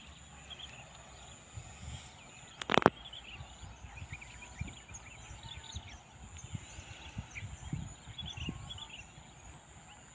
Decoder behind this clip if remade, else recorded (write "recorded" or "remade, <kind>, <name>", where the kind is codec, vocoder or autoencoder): recorded